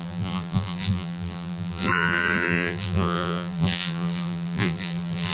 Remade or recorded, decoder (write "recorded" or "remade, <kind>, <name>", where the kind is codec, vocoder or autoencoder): remade, vocoder, BigVGAN v2